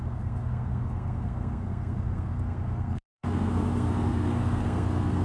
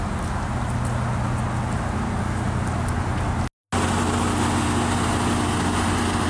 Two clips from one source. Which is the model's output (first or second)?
first